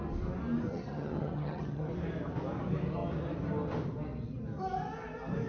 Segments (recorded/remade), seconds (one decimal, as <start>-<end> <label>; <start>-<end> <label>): 0.0-0.7 recorded; 0.7-1.9 remade; 1.9-5.5 recorded

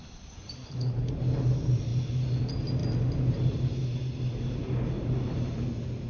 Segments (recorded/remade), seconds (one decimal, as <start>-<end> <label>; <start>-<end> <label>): 0.0-0.6 recorded; 0.6-1.1 remade; 1.1-6.1 recorded

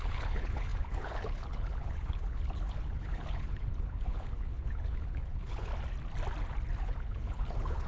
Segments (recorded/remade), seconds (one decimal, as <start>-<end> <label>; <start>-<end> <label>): 0.0-5.7 remade; 5.7-6.8 recorded; 6.8-7.9 remade

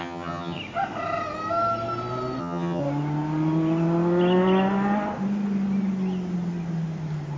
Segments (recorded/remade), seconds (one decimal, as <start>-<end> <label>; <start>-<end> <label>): 0.0-0.6 remade; 0.6-2.4 recorded; 2.4-2.8 remade; 2.8-7.4 recorded

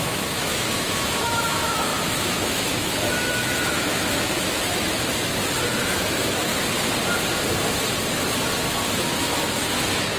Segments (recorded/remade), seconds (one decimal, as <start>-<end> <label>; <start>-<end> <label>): 0.0-6.5 remade; 6.5-8.7 recorded; 8.7-10.2 remade

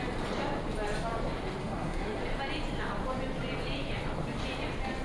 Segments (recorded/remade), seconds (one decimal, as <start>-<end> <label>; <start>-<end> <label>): 0.0-1.6 recorded; 1.6-2.2 remade; 2.2-5.0 recorded

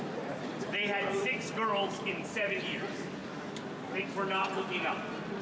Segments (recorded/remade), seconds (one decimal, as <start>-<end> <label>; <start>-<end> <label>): 0.0-5.4 recorded

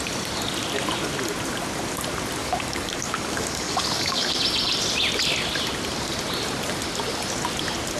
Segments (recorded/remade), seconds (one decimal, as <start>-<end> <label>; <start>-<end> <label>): 0.0-2.4 recorded; 2.4-4.3 remade; 4.3-8.0 recorded